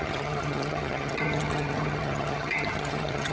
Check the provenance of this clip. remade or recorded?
remade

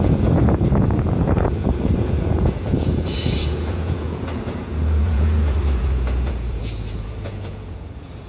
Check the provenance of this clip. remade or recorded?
remade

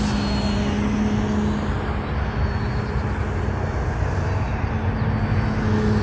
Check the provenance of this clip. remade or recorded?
recorded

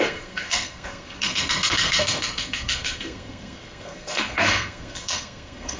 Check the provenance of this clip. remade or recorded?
remade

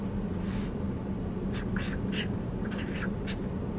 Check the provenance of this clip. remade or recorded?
recorded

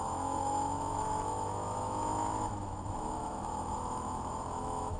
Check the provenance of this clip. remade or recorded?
remade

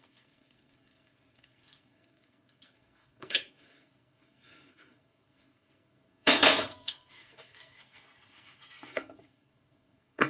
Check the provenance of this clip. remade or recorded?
remade